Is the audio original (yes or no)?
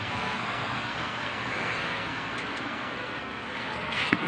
no